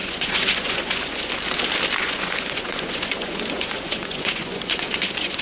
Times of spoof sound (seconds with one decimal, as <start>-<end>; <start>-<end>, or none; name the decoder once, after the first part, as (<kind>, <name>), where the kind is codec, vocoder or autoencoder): 0.0-1.3 (vocoder, Vocos); 2.0-5.4